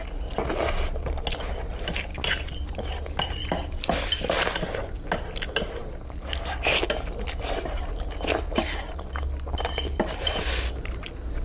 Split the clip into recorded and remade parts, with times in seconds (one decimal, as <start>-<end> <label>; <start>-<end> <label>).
0.0-11.4 recorded